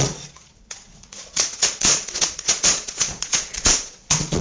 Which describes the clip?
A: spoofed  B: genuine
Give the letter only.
A